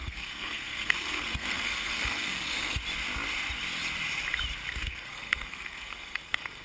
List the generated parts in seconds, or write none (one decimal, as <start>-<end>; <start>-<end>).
0.0-2.8; 4.7-6.6